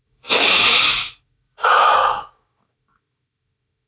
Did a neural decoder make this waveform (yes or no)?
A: yes